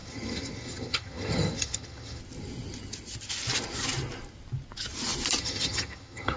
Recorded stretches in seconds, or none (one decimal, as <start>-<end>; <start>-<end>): 2.2-5.4